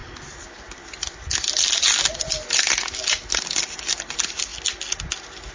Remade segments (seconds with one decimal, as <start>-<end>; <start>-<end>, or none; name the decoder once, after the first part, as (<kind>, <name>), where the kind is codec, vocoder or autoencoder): none